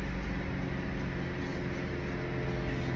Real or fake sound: real